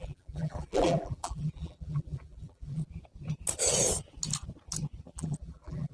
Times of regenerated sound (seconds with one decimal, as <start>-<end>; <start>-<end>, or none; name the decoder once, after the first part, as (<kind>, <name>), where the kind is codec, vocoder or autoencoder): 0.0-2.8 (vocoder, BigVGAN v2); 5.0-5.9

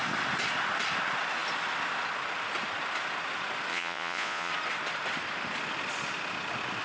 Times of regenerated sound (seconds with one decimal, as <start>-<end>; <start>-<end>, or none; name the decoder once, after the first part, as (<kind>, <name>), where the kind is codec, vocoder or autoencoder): 3.7-4.5 (vocoder, Vocos)

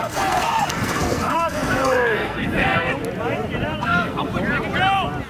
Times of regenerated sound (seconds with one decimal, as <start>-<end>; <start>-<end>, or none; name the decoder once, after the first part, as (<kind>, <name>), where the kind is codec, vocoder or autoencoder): 0.0-2.9 (codec, SNAC); 3.8-4.3

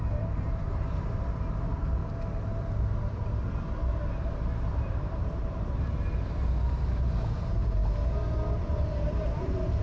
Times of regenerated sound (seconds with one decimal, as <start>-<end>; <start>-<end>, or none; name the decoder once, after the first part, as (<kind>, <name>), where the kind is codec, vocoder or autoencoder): 0.0-2.0 (vocoder, BigVGAN v2); 4.3-7.8; 9.2-9.8

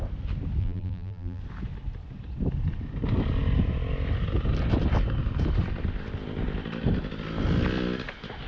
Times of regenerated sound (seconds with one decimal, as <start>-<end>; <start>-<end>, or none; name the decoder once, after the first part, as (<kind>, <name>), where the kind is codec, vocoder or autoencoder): 0.6-1.4 (vocoder, BigVGAN v2)

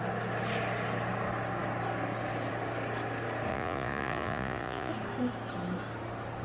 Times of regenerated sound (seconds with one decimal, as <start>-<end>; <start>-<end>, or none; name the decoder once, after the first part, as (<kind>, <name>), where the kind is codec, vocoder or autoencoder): 3.5-4.9 (vocoder, Vocos)